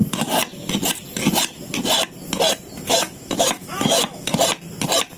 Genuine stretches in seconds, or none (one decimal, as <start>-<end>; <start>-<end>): 0.0-2.9; 4.3-5.2